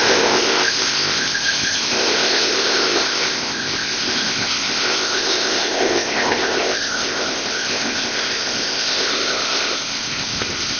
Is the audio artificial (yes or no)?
yes